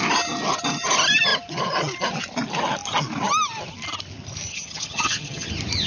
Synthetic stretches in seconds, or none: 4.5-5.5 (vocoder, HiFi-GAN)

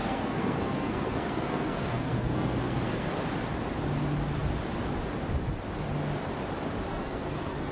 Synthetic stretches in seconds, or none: 0.0-3.1 (codec, SNAC); 6.9-7.7